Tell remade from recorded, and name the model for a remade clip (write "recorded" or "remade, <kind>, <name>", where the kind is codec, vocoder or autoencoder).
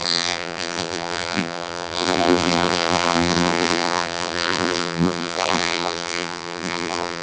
remade, vocoder, BigVGAN v2